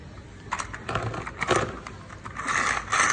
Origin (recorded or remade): recorded